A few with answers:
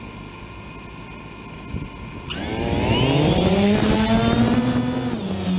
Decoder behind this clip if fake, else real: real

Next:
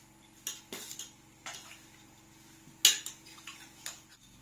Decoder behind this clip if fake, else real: real